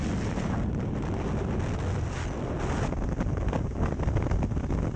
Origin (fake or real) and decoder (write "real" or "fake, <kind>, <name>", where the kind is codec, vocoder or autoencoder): real